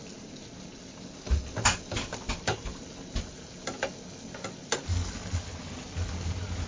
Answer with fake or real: real